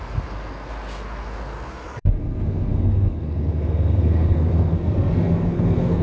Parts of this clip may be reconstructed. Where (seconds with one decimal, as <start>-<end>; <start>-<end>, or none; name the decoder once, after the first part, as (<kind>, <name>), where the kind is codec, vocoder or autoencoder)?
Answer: 0.0-6.0 (codec, SNAC)